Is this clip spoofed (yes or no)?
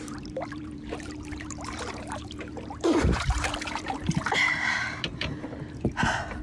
yes